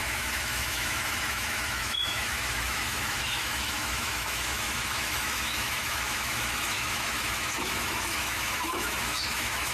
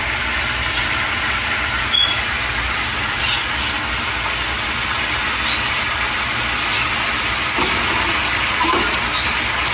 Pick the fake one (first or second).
first